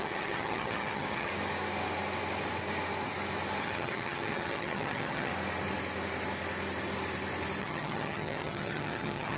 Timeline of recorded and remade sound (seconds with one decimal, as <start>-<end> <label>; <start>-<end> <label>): 0.0-1.3 remade; 1.3-3.6 recorded; 3.6-5.3 remade; 5.3-7.6 recorded; 7.6-9.4 remade